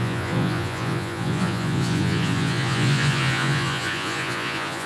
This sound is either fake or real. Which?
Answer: fake